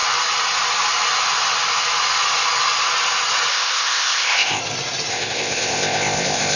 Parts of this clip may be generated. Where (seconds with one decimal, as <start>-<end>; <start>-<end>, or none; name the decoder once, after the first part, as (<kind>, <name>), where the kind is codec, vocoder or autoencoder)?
3.5-4.6 (codec, ZipCodec); 5.1-6.6